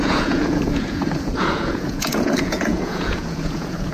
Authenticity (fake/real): fake